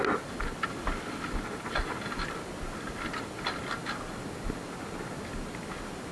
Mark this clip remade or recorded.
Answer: recorded